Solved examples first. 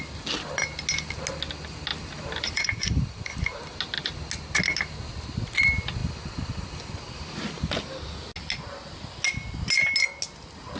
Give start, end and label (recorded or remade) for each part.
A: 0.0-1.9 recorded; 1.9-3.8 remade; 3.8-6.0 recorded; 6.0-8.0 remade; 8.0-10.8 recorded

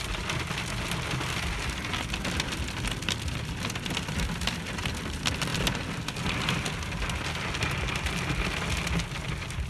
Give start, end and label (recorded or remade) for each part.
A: 0.0-9.7 recorded

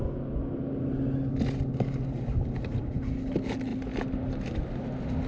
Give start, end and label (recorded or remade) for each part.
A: 0.0-5.3 recorded

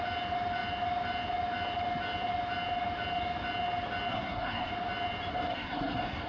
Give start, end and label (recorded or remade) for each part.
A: 0.0-4.1 recorded; 4.1-4.7 remade; 4.7-5.3 recorded; 5.3-6.3 remade

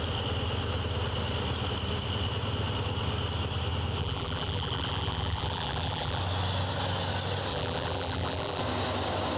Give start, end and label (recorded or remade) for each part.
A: 0.0-4.0 recorded; 4.0-6.2 remade; 6.2-7.5 recorded; 7.5-8.6 remade; 8.6-9.4 recorded